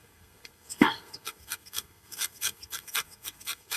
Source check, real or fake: fake